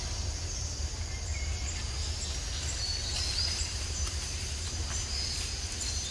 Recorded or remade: recorded